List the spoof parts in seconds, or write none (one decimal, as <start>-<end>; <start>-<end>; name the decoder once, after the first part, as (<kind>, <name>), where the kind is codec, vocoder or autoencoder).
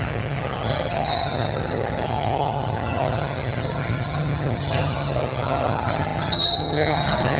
0.0-7.4 (vocoder, HiFi-GAN)